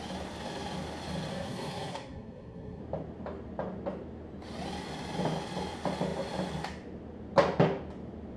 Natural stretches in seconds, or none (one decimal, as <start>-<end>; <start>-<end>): 0.0-1.3; 2.8-8.4

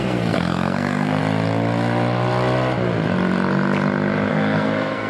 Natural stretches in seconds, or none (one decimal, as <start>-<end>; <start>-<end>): 1.2-4.3

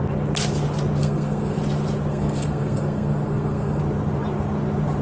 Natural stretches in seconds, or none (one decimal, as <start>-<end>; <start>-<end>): 0.0-1.0; 1.6-2.1; 3.8-5.0

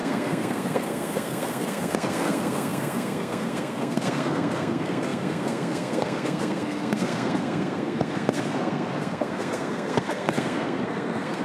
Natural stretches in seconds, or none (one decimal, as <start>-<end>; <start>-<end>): none

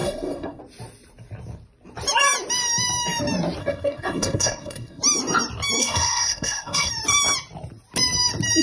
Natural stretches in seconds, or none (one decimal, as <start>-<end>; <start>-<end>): 0.6-3.6; 5.0-5.8; 6.9-8.6

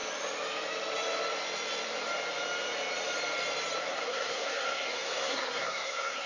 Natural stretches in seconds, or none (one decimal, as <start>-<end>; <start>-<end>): 0.0-3.8

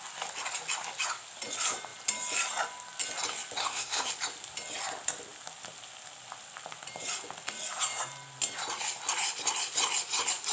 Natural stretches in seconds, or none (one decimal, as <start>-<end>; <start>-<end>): 0.0-3.6; 4.1-10.5